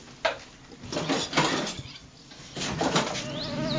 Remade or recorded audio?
recorded